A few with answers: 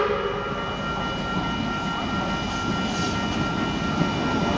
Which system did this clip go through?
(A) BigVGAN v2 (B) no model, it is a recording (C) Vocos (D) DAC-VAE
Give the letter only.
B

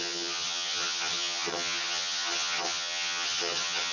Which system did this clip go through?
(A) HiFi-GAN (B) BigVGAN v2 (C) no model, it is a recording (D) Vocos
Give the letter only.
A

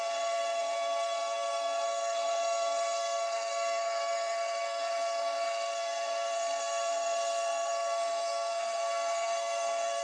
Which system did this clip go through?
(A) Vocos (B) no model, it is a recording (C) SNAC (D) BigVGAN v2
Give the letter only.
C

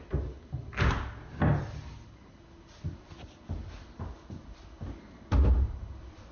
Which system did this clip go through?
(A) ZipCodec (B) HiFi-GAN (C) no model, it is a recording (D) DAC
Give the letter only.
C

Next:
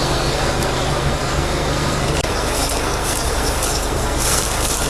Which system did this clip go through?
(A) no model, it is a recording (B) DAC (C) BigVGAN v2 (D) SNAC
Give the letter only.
D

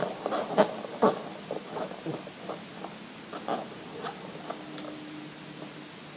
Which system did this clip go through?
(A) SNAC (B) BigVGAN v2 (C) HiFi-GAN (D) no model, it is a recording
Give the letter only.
D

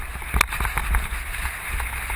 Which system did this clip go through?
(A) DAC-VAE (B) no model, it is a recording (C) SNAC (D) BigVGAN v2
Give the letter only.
B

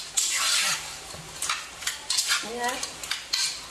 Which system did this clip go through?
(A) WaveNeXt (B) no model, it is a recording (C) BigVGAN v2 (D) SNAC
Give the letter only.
B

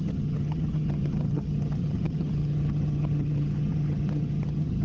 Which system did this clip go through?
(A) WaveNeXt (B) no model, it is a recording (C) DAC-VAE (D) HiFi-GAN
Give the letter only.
D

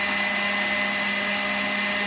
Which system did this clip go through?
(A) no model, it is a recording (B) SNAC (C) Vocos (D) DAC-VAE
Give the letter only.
A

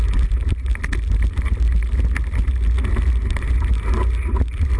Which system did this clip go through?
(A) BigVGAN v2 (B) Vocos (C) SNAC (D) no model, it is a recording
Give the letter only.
D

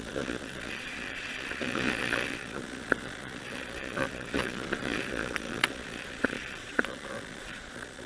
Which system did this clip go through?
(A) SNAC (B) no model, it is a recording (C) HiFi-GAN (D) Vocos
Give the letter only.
D